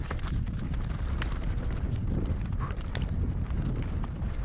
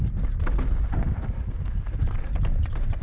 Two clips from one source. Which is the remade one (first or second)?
first